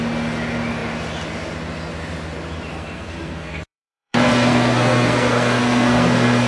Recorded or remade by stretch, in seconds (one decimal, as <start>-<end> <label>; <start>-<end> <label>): 0.0-2.7 recorded; 2.7-6.5 remade